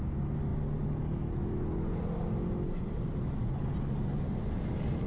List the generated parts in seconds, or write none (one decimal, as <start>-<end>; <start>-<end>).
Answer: none